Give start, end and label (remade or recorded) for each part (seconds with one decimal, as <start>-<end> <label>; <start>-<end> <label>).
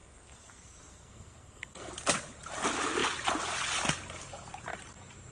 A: 0.0-1.9 remade; 1.9-5.3 recorded